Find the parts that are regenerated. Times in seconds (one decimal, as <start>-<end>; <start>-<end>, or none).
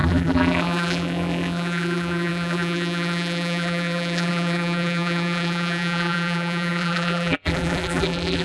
0.0-8.4